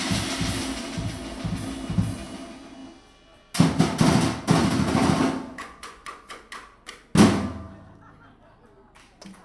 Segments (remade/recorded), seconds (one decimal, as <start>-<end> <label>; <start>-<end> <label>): 0.0-5.5 recorded; 5.5-6.4 remade; 6.4-9.4 recorded